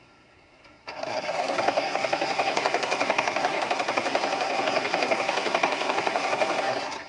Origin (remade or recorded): remade